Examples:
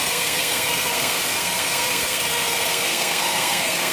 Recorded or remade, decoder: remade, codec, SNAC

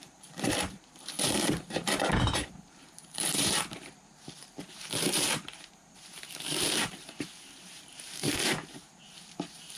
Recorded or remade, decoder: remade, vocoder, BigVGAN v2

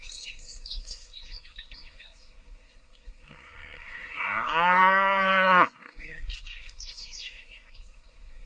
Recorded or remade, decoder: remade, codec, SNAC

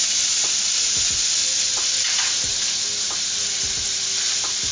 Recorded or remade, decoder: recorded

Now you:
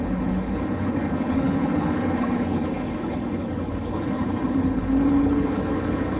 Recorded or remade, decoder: remade, codec, HILCodec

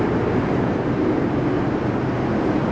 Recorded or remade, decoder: recorded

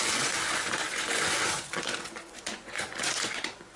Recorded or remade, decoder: remade, vocoder, Vocos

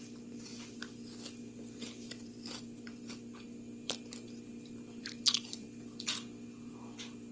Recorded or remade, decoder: remade, vocoder, BigVGAN v2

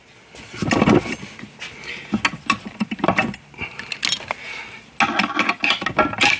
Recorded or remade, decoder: recorded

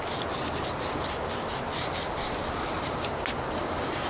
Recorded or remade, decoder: recorded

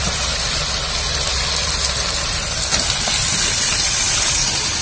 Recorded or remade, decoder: remade, vocoder, BigVGAN v2